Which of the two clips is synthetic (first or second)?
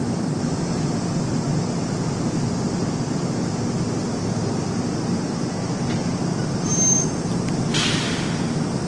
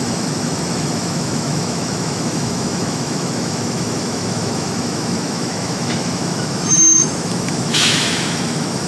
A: second